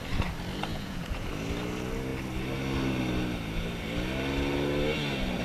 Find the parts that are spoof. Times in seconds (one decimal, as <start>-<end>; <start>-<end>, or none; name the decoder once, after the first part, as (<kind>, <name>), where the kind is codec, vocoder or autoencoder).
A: 0.7-1.3 (vocoder, Vocos)